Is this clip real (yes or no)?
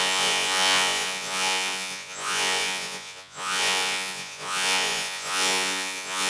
no